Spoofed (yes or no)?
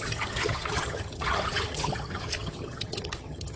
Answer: yes